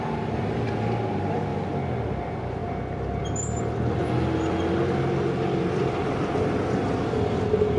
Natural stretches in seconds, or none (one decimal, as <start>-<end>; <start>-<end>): 0.0-7.8